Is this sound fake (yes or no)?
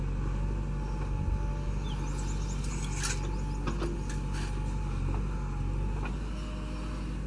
no